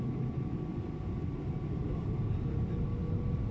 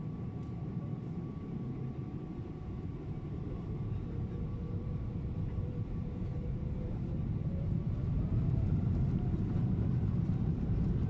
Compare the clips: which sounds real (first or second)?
first